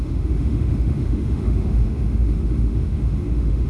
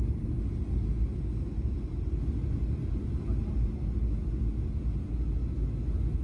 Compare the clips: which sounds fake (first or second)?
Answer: first